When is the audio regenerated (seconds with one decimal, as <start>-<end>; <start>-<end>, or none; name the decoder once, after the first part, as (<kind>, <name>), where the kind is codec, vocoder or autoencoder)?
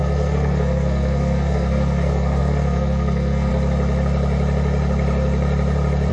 0.0-3.5 (codec, SNAC)